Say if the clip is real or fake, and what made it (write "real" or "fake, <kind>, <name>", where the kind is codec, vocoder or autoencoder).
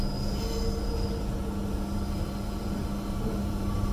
real